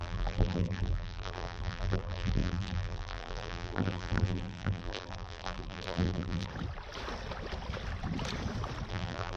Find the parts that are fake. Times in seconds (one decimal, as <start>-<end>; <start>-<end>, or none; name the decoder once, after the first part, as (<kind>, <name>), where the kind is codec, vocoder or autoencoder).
0.0-6.5 (vocoder, BigVGAN v2); 8.9-9.4